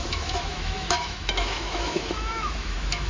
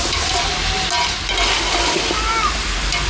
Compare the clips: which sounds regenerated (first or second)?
first